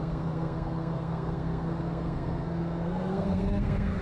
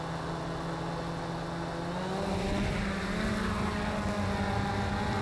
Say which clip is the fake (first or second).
first